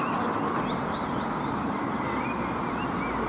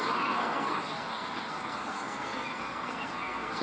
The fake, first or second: second